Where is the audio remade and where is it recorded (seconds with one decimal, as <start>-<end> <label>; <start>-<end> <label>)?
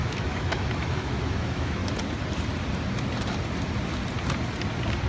0.0-1.8 remade; 1.8-5.1 recorded